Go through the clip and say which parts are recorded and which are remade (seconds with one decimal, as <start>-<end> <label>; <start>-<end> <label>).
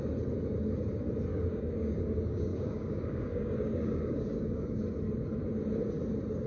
0.0-1.3 recorded; 1.3-4.8 remade; 4.8-6.5 recorded